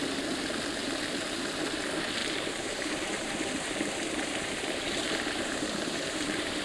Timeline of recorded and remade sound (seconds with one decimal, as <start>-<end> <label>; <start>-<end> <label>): 0.0-2.2 recorded; 2.2-6.6 remade